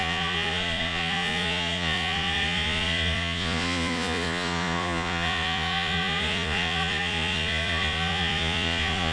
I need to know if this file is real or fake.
fake